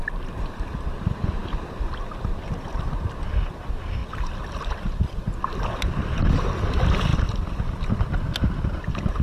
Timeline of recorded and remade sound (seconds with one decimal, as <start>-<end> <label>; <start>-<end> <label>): 0.0-9.2 recorded